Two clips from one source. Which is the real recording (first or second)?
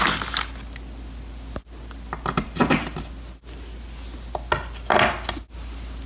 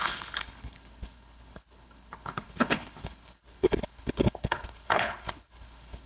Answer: first